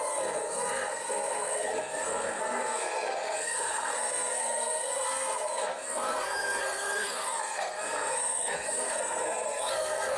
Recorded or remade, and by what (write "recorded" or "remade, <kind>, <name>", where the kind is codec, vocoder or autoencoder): remade, codec, SNAC